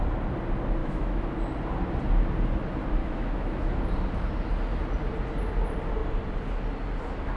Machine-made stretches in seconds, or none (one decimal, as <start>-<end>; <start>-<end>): 0.8-1.4; 3.0-3.8